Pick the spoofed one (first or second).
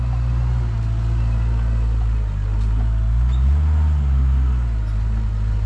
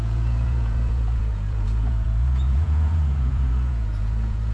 second